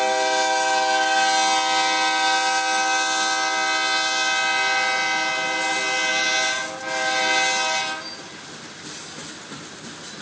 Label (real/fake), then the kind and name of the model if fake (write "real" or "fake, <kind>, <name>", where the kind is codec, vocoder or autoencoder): real